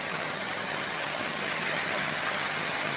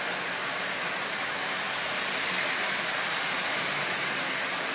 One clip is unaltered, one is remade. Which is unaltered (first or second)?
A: second